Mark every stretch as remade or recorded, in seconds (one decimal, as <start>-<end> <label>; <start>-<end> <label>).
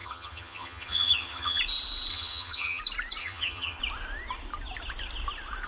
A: 0.0-1.6 remade; 1.6-2.1 recorded; 2.1-2.8 remade; 2.8-3.2 recorded; 3.2-3.8 remade; 3.8-5.7 recorded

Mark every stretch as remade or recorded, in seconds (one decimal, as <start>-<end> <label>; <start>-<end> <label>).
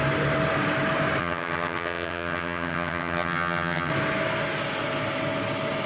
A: 0.0-1.2 recorded; 1.2-3.9 remade; 3.9-5.9 recorded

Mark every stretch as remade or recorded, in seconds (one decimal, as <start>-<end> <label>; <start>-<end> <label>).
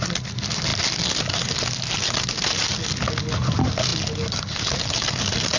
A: 0.0-5.6 recorded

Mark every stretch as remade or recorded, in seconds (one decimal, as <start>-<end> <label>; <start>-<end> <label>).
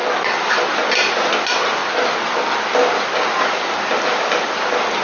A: 0.0-5.0 recorded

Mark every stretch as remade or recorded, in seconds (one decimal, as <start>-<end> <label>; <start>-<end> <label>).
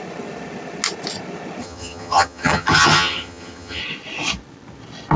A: 0.0-1.6 recorded; 1.6-3.8 remade; 3.8-5.2 recorded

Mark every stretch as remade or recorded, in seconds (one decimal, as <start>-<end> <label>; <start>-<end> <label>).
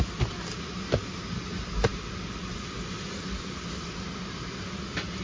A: 0.0-5.2 recorded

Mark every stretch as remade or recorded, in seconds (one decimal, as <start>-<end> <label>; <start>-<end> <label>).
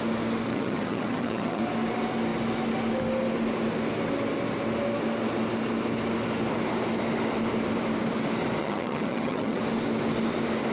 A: 0.0-0.5 recorded; 0.5-1.6 remade; 1.6-8.6 recorded; 8.6-9.6 remade; 9.6-10.7 recorded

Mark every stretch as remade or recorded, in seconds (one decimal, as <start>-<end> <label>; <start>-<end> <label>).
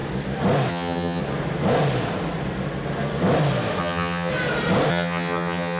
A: 0.0-0.7 recorded; 0.7-1.2 remade; 1.2-3.8 recorded; 3.8-4.3 remade; 4.3-4.9 recorded; 4.9-5.8 remade